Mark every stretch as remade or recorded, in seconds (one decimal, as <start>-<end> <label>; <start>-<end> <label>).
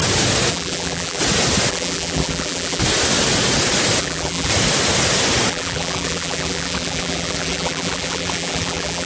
0.0-0.5 recorded; 0.5-1.2 remade; 1.2-1.7 recorded; 1.7-2.8 remade; 2.8-4.0 recorded; 4.0-4.5 remade; 4.5-5.5 recorded; 5.5-9.1 remade